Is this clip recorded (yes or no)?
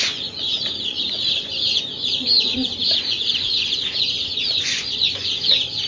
no